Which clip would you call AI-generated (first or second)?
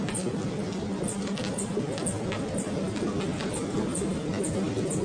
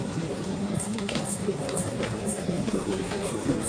second